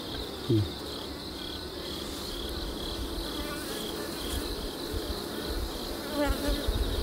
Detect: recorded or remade recorded